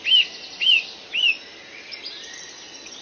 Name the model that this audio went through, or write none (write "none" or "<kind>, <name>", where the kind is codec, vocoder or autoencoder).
none